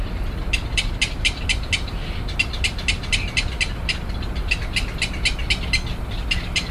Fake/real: real